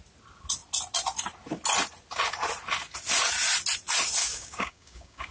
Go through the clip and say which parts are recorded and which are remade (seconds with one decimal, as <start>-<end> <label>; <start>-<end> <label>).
0.0-4.2 recorded; 4.2-5.3 remade